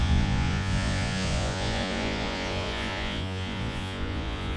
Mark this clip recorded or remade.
remade